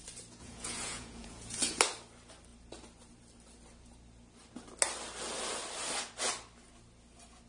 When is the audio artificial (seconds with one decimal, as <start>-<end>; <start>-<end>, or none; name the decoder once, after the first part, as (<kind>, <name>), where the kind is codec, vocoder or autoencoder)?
0.4-1.8 (vocoder, Vocos)